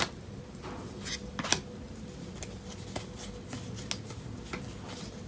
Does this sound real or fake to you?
real